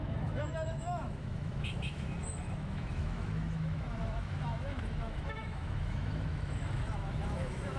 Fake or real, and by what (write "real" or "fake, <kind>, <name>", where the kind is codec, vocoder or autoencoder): fake, autoencoder, DAC-VAE